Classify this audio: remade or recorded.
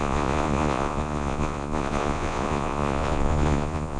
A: remade